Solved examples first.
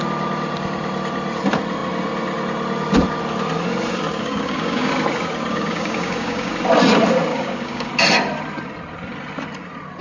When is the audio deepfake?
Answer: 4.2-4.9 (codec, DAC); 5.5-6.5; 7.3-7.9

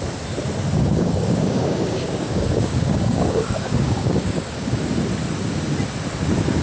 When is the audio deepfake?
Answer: 0.8-4.8 (codec, DAC)

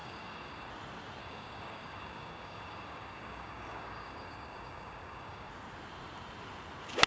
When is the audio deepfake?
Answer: 0.0-0.7 (codec, DAC); 1.2-5.5

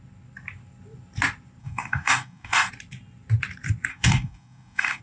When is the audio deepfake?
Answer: 1.6-2.7 (codec, DAC); 3.9-5.0

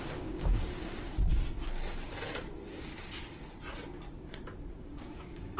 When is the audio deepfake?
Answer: 0.0-1.4 (codec, DAC); 2.5-2.9; 4.7-5.6

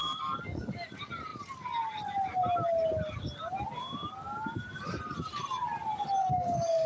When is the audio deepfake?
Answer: 0.0-0.9 (codec, DAC); 6.2-6.9

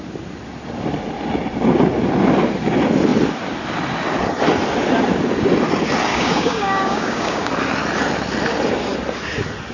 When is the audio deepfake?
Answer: 6.1-7.5 (codec, DAC)